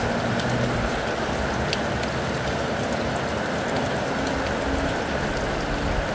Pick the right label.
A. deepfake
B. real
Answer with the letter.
B